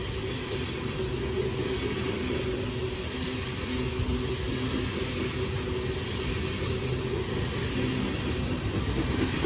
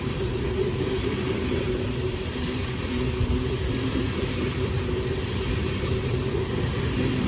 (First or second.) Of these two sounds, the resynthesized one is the second